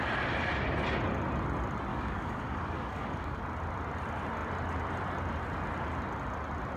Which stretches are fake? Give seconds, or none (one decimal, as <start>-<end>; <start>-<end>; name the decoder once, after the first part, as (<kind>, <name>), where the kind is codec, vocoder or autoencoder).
1.9-3.4 (codec, DAC)